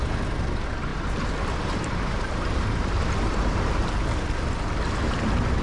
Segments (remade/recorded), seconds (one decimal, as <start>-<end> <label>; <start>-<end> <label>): 0.0-0.9 recorded; 0.9-3.3 remade; 3.3-5.6 recorded